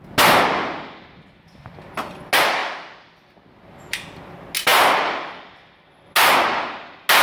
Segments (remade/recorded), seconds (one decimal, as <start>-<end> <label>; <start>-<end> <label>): 0.0-7.2 recorded